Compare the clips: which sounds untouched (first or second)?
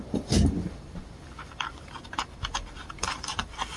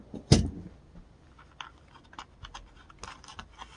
second